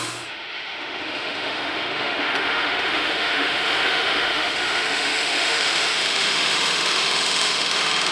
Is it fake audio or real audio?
fake